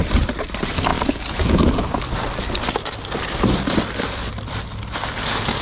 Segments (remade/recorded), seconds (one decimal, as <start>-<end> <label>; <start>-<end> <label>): 0.0-5.6 recorded